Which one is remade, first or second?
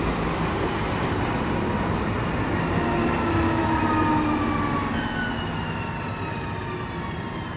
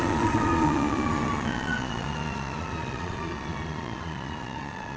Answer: second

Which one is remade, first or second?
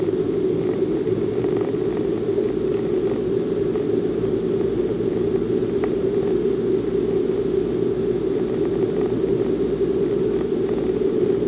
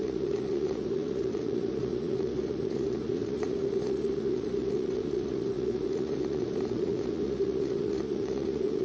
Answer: second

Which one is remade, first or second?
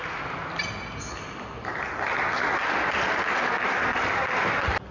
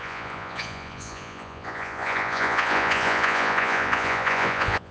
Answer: second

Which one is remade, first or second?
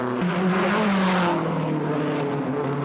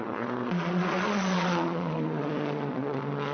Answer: second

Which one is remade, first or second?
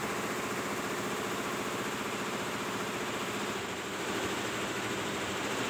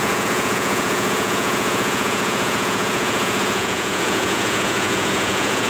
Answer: second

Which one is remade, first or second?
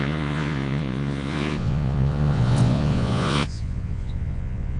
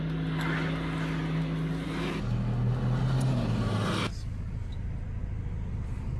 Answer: first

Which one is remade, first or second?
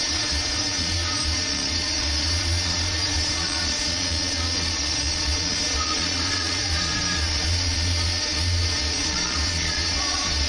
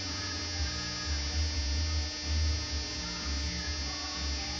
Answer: first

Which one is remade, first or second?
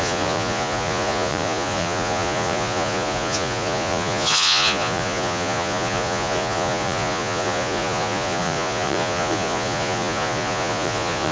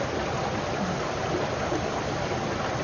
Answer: first